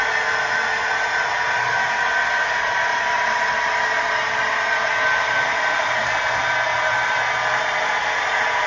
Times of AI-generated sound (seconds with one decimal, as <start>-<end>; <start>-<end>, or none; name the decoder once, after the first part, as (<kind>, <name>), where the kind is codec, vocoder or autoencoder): 2.9-3.5 (vocoder, BigVGAN v2)